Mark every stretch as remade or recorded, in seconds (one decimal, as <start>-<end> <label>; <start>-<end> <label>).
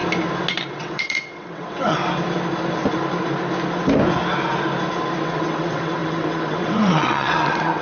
0.0-0.7 recorded; 0.7-2.0 remade; 2.0-5.2 recorded; 5.2-7.8 remade